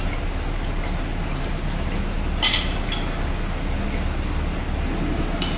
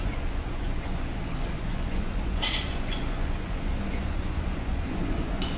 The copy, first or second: second